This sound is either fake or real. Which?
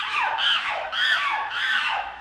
fake